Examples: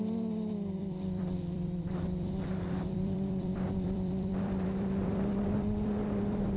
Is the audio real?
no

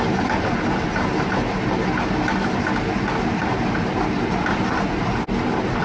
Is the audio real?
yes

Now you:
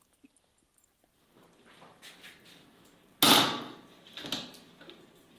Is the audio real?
yes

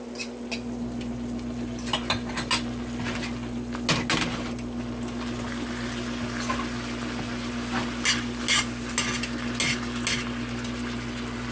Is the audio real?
yes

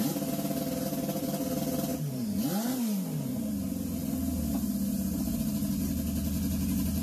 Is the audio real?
yes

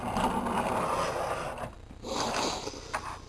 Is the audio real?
yes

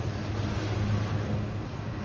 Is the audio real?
yes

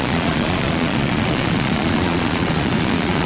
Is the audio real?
no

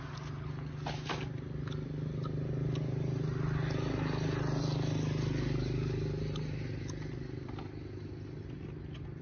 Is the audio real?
yes